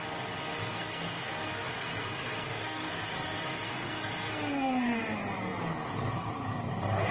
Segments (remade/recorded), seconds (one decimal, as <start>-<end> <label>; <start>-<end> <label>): 0.0-0.7 recorded; 0.7-5.0 remade; 5.0-7.1 recorded